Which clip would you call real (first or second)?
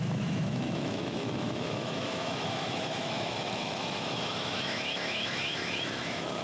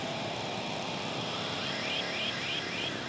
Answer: second